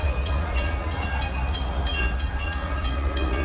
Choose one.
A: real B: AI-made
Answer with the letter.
B